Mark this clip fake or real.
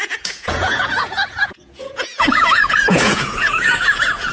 fake